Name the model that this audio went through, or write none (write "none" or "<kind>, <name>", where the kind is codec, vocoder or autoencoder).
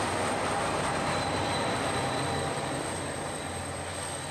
vocoder, BigVGAN v2